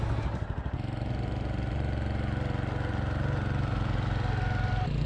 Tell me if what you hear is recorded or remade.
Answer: recorded